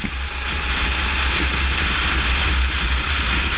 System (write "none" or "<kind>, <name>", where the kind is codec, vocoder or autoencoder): none